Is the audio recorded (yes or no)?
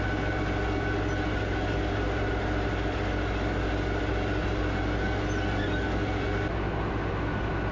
yes